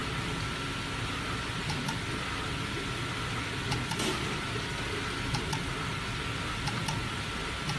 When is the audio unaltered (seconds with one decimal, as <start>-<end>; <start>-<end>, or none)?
0.0-7.8

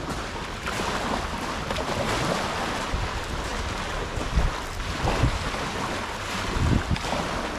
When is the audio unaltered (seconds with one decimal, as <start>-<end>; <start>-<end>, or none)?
0.0-7.6

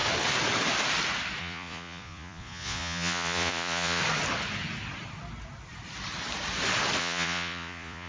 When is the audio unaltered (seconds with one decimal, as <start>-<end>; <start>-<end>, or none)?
0.0-1.4; 4.0-7.0